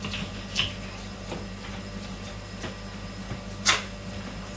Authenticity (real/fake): real